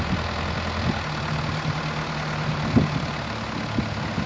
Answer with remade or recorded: recorded